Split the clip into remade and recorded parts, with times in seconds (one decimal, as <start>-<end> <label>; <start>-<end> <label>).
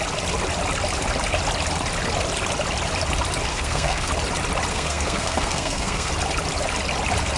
0.0-3.5 recorded; 3.5-4.1 remade; 4.1-4.7 recorded; 4.7-6.1 remade; 6.1-7.4 recorded